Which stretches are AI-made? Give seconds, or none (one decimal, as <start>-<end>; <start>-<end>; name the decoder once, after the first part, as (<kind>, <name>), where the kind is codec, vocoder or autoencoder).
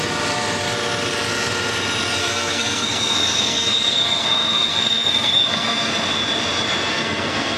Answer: 2.2-5.9 (codec, SNAC); 6.9-7.6